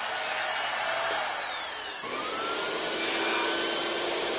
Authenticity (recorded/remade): recorded